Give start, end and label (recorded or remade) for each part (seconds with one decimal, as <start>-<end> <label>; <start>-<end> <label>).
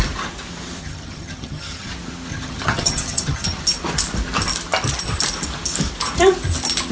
0.0-0.8 recorded; 0.8-1.9 remade; 1.9-2.3 recorded; 2.3-3.6 remade; 3.6-6.9 recorded